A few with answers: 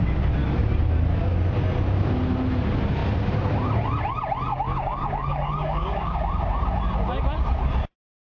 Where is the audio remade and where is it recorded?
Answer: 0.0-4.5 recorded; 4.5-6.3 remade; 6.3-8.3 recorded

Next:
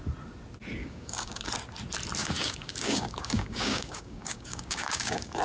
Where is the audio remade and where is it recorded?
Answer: 0.0-0.8 recorded; 0.8-1.5 remade; 1.5-2.2 recorded; 2.2-5.4 remade

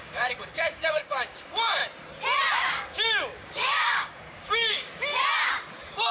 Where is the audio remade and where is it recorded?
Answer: 0.0-1.8 remade; 1.8-2.5 recorded; 2.5-5.1 remade; 5.1-6.1 recorded

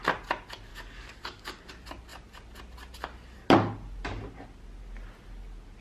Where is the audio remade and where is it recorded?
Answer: 0.0-0.7 recorded; 0.7-1.7 remade; 1.7-5.8 recorded

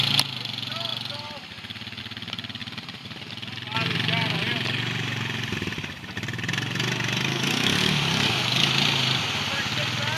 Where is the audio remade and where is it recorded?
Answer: 0.0-7.3 recorded; 7.3-8.7 remade; 8.7-10.2 recorded

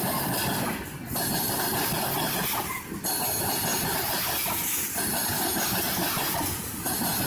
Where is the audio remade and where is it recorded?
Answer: 0.0-7.3 recorded

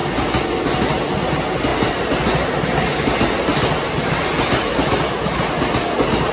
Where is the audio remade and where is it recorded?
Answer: 0.0-6.3 recorded

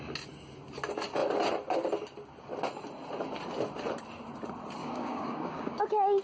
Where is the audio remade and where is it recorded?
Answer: 0.0-4.8 recorded; 4.8-5.8 remade; 5.8-6.2 recorded